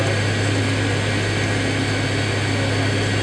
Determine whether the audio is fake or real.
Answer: real